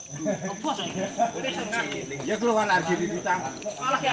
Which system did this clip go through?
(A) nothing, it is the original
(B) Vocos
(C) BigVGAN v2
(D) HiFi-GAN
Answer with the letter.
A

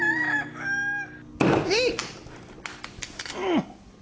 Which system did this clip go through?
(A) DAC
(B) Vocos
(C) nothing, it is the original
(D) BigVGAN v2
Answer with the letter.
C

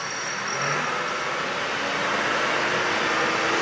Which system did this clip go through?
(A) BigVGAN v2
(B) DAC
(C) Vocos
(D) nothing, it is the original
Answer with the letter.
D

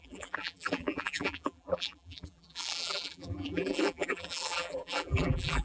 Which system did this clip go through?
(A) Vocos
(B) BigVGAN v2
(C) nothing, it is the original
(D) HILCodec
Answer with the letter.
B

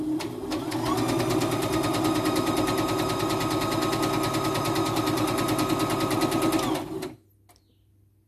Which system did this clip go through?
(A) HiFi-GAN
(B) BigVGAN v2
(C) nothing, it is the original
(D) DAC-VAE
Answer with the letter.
C